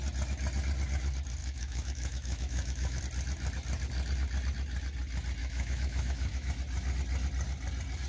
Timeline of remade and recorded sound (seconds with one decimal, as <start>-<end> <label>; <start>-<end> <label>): 0.0-1.4 recorded; 1.4-3.0 remade; 3.0-5.4 recorded; 5.4-6.5 remade; 6.5-8.1 recorded